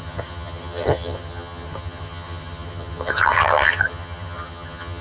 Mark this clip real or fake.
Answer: fake